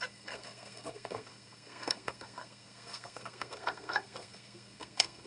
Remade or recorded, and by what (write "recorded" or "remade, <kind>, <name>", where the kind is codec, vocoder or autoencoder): remade, codec, SNAC